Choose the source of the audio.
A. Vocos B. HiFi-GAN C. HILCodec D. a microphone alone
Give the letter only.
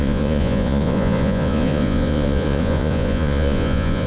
A